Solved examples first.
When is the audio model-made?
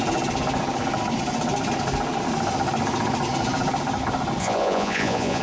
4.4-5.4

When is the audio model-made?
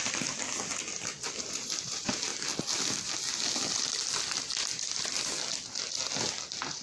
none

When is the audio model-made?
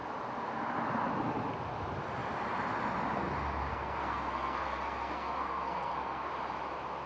3.7-6.3